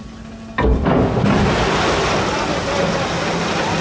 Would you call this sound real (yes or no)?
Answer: yes